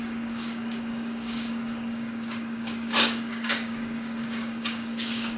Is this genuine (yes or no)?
no